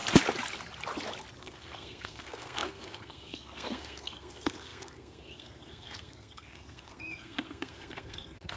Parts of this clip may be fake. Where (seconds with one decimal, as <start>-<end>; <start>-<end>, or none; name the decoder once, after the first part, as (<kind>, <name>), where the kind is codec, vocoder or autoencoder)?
1.4-8.6 (codec, SNAC)